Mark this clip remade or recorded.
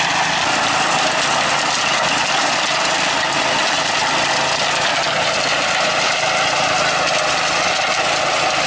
recorded